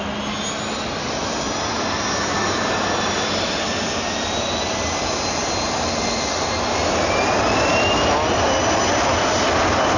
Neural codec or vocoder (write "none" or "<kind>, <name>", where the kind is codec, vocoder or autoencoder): none